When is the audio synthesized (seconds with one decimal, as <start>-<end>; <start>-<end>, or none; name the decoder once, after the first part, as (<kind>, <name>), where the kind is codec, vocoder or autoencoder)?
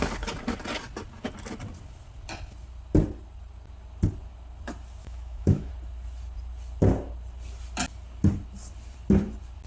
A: 5.0-5.7 (autoencoder, DAC-VAE)